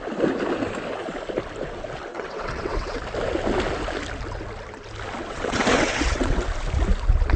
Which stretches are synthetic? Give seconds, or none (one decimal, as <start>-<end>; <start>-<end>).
2.1-3.0; 5.2-6.4